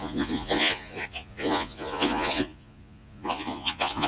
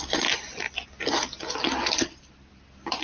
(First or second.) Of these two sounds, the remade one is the first